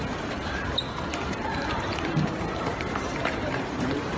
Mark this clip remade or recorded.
remade